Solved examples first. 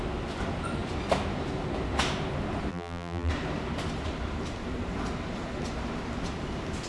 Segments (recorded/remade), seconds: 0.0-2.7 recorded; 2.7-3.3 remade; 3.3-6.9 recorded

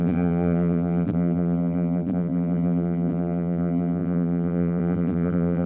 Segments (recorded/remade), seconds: 0.0-5.7 remade

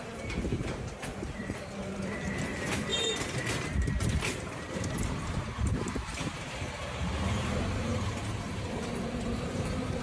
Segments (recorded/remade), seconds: 0.0-10.0 remade

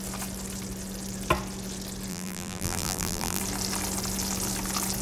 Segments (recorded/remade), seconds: 0.0-2.1 recorded; 2.1-3.4 remade; 3.4-5.0 recorded

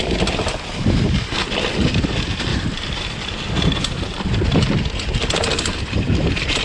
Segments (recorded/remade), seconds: 0.0-2.5 recorded; 2.5-6.6 remade